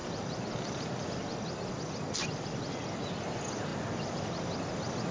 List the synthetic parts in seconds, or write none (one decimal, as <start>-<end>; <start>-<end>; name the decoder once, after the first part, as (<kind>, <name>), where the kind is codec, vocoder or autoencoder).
none